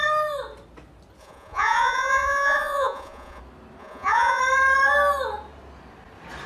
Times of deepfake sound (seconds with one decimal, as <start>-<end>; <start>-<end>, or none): 1.2-3.4; 3.8-4.4